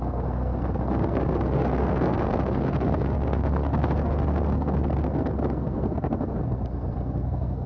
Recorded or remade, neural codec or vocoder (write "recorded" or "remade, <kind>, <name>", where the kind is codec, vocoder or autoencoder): remade, codec, SNAC